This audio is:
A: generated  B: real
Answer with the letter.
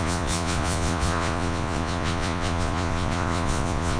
A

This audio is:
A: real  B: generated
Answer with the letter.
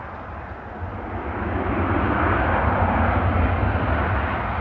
A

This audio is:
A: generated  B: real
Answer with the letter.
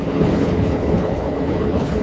A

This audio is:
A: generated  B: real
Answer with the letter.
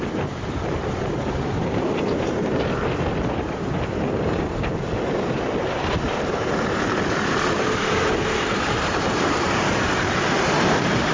A